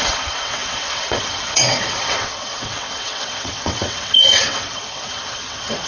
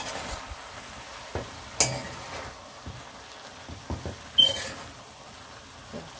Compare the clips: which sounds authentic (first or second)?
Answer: second